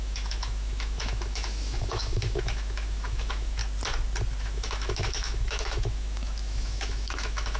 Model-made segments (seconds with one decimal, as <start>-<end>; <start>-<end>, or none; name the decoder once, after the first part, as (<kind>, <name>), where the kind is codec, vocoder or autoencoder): 0.0-3.6 (autoencoder, DAC-VAE); 4.4-7.6